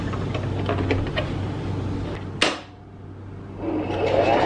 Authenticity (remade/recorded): recorded